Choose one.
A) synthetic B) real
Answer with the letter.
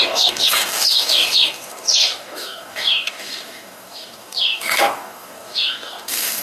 A